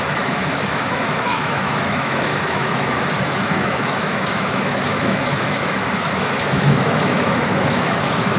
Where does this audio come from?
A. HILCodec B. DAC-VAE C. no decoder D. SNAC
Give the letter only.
B